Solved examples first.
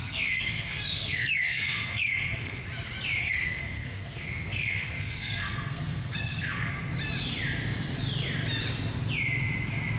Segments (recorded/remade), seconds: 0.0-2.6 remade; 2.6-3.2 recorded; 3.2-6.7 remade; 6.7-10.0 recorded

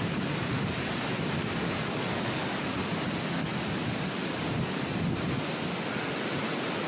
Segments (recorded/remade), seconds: 0.0-1.4 recorded; 1.4-2.6 remade; 2.6-6.9 recorded

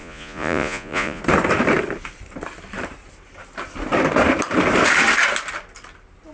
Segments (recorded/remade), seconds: 0.0-1.2 remade; 1.2-6.3 recorded